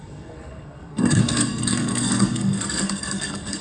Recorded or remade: remade